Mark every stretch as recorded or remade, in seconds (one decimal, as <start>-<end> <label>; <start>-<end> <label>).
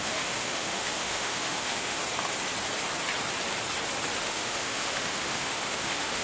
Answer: 0.0-2.0 remade; 2.0-4.2 recorded; 4.2-6.2 remade